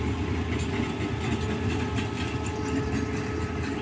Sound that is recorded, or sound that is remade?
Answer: recorded